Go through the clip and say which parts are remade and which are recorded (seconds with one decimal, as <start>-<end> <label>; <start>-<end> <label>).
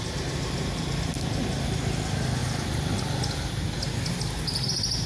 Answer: 0.0-5.1 recorded